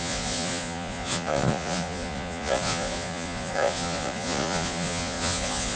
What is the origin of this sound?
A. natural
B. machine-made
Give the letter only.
B